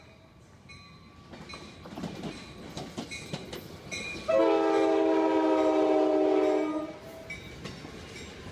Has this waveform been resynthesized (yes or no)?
no